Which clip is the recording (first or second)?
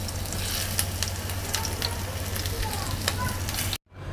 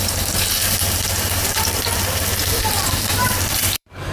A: first